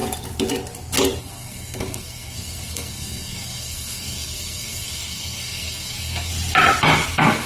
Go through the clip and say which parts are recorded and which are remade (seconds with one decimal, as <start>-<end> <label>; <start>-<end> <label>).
0.0-1.2 recorded; 1.2-6.3 remade; 6.3-7.1 recorded; 7.1-7.5 remade